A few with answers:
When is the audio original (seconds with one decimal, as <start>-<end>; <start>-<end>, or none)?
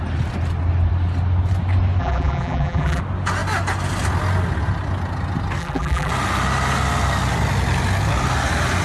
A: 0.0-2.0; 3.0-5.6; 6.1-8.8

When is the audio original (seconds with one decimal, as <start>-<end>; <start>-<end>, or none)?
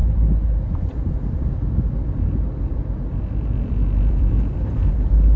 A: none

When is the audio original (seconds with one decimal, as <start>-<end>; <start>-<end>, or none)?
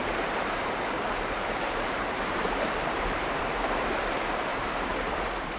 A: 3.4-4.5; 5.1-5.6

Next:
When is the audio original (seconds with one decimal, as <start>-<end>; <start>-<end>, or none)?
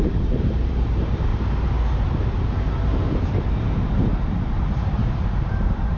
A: 1.3-2.7; 4.1-4.7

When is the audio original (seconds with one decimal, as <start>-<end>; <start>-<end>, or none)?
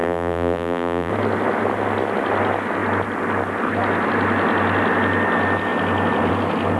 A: 1.1-6.8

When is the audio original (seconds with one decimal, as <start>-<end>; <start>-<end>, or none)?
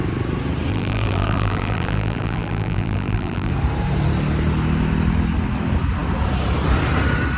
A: 0.0-0.7; 3.5-7.4